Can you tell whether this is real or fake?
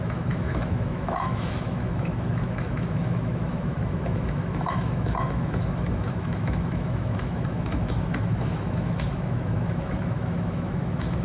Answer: fake